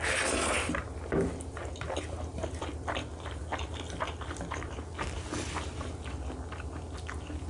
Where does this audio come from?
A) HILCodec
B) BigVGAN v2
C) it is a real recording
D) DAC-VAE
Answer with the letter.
C